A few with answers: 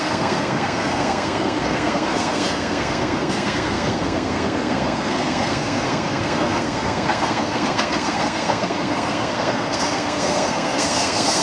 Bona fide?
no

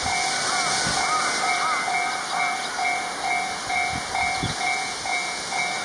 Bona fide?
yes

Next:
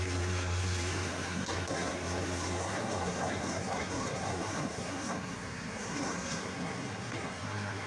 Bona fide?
no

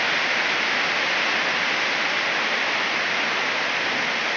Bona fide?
yes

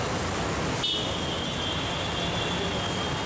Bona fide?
yes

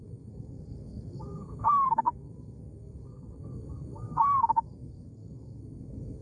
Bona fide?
no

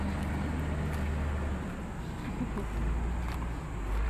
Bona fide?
yes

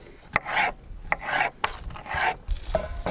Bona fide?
yes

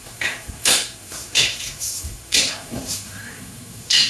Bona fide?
no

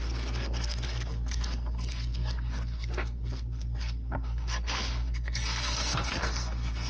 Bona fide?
no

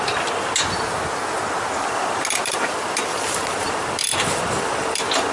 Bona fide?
yes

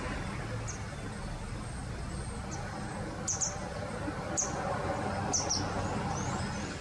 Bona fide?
yes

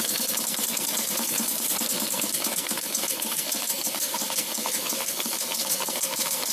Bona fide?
no